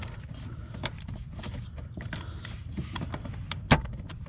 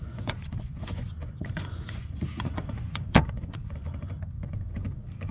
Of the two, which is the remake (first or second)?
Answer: second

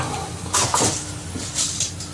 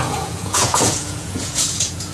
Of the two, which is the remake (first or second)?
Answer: second